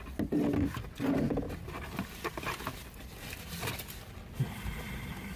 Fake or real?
real